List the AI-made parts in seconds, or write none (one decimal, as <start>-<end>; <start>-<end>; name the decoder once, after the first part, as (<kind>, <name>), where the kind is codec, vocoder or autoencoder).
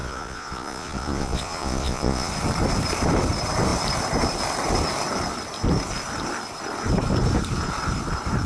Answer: 0.0-2.3 (vocoder, Vocos)